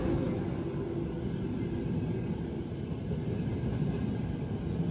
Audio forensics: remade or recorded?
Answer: recorded